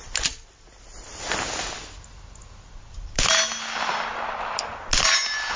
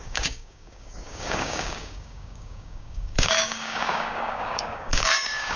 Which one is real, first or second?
first